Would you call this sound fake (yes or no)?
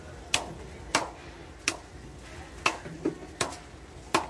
no